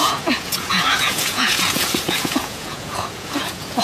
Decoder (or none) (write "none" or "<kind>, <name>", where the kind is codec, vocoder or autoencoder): vocoder, Vocos